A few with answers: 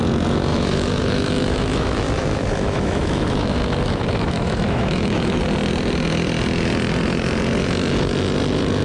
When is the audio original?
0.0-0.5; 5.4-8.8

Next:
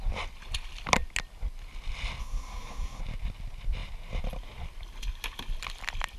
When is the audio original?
0.0-2.2; 3.0-6.2

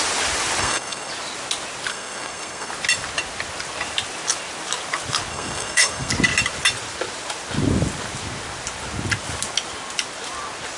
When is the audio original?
0.0-0.6; 1.1-1.9; 2.7-5.3; 6.1-10.8